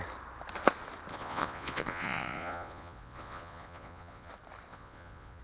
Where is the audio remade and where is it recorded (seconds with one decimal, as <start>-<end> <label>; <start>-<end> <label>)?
0.0-1.1 recorded; 1.1-4.3 remade; 4.3-4.7 recorded; 4.7-5.4 remade